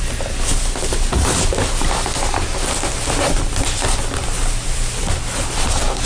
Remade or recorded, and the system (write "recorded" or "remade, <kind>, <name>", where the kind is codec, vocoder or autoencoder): recorded